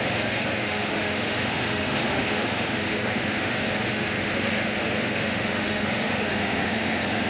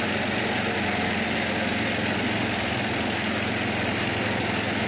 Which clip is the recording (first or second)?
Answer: second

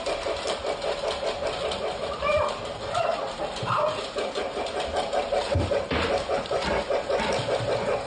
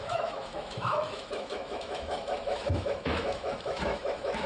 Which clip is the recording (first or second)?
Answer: first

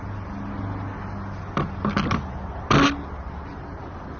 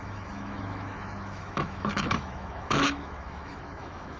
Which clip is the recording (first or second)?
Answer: first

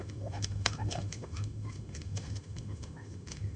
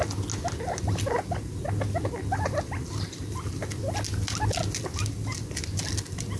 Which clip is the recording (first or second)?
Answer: second